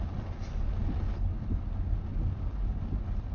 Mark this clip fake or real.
real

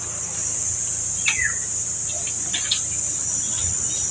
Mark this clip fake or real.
real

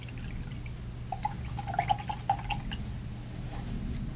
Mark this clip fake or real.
real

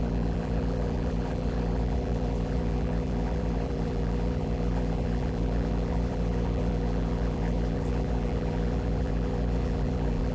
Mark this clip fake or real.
fake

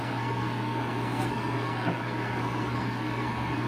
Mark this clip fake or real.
fake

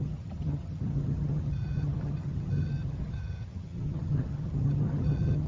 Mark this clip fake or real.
fake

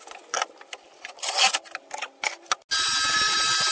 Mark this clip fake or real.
real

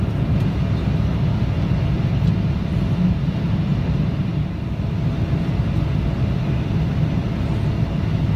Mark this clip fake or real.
real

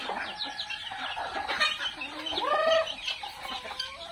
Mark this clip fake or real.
real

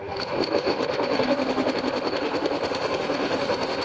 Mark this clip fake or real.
fake